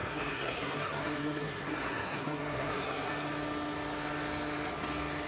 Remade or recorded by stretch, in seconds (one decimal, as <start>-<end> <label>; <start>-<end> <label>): 0.0-3.1 remade; 3.1-5.3 recorded

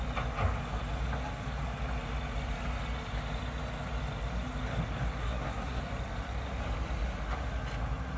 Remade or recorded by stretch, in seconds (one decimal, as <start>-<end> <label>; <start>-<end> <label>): 0.0-5.2 recorded; 5.2-5.8 remade; 5.8-8.2 recorded

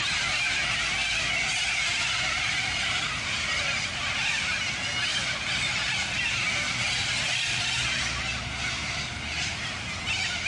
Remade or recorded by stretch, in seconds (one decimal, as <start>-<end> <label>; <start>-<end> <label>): 0.0-10.5 recorded